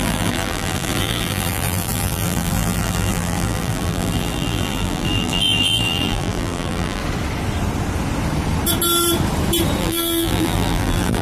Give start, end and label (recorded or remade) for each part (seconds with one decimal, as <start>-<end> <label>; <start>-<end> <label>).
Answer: 0.0-7.0 remade; 7.0-9.8 recorded; 9.8-11.2 remade